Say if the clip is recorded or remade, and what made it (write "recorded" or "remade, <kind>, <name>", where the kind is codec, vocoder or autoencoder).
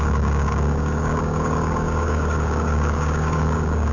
remade, codec, DAC